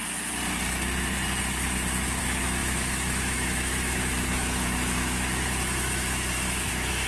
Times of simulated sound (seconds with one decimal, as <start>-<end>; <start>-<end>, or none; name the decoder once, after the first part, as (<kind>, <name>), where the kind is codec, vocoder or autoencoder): 2.2-7.1 (autoencoder, DAC-VAE)